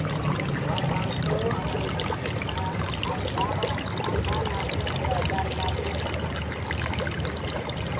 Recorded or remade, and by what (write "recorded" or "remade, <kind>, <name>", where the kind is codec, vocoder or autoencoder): recorded